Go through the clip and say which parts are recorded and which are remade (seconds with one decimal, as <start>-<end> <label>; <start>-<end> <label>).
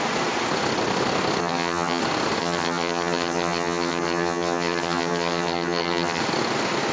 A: 0.0-1.4 recorded; 1.4-2.0 remade; 2.0-2.4 recorded; 2.4-6.2 remade; 6.2-6.9 recorded